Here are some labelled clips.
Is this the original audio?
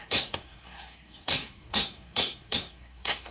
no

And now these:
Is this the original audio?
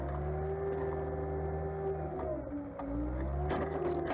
yes